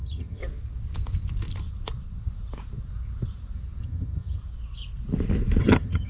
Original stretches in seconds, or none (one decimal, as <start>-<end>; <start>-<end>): 0.4-3.8; 4.4-5.6